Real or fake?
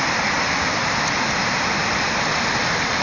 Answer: fake